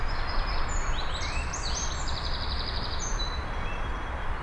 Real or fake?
real